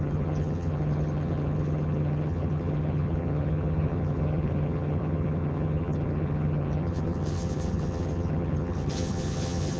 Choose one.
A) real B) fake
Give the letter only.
B